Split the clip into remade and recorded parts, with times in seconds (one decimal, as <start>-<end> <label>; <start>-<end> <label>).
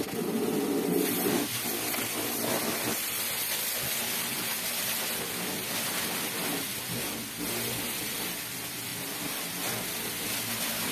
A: 0.0-10.9 recorded